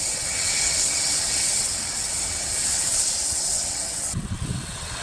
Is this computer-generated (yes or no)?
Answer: yes